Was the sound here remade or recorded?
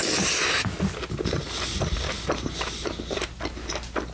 recorded